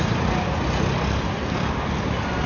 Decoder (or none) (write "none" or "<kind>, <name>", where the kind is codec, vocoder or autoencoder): none